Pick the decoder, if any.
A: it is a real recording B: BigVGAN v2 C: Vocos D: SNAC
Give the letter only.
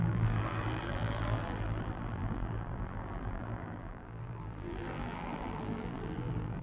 B